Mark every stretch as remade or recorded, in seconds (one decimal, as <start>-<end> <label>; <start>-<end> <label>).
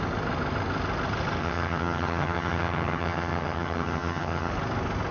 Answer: 0.0-1.4 recorded; 1.4-4.5 remade; 4.5-5.1 recorded